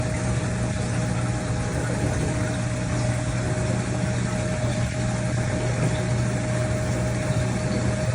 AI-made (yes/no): no